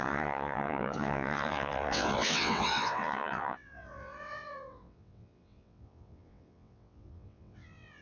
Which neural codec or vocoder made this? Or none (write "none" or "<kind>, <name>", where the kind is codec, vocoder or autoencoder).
vocoder, WaveNeXt